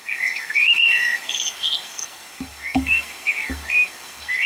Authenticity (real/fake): fake